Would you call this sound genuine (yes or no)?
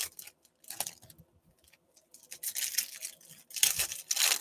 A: yes